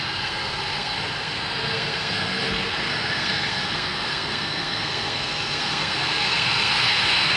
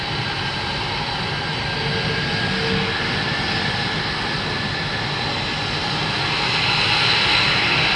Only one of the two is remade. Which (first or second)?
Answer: first